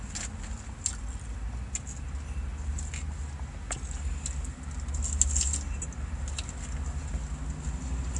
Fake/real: real